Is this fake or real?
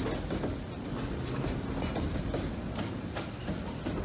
real